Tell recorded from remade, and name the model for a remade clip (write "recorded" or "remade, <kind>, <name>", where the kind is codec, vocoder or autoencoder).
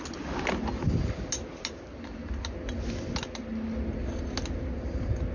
recorded